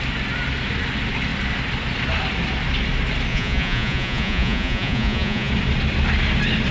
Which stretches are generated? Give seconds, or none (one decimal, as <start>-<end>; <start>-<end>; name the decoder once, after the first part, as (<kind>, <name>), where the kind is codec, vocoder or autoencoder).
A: 3.3-5.5 (vocoder, Vocos)